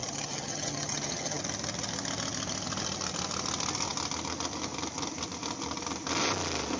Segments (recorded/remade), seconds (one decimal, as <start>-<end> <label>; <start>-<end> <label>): 0.0-1.4 remade; 1.4-6.8 recorded